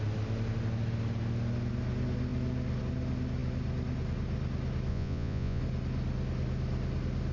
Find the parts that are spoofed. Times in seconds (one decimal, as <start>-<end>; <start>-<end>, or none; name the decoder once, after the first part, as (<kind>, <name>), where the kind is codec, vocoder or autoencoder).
4.9-5.6 (vocoder, Vocos)